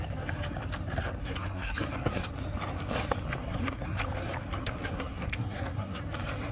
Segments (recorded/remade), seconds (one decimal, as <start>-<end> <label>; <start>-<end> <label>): 0.0-1.2 recorded; 1.2-2.3 remade; 2.3-3.4 recorded; 3.4-4.0 remade; 4.0-4.6 recorded; 4.6-6.0 remade; 6.0-6.5 recorded